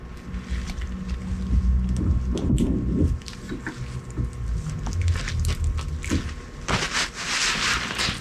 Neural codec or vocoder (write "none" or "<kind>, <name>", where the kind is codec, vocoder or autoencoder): none